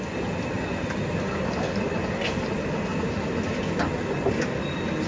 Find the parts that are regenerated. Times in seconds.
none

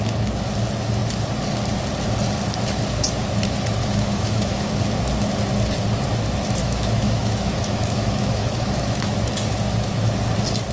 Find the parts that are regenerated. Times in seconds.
3.8-4.8 (autoencoder, DAC-VAE); 6.6-9.2

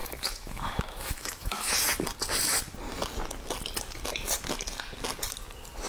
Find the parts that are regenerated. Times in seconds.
0.0-1.7 (autoencoder, DAC-VAE)

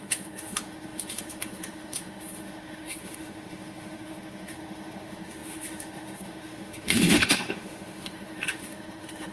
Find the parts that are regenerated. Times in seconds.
0.0-9.3 (autoencoder, DAC-VAE)

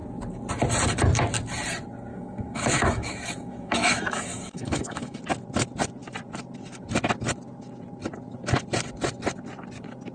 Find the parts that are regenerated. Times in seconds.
2.1-5.2 (autoencoder, DAC-VAE)

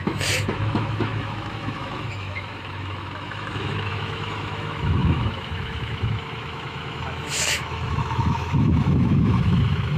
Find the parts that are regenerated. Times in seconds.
0.0-10.0 (autoencoder, DAC-VAE)